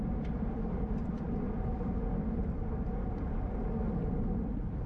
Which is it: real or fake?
fake